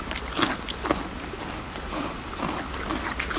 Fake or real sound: real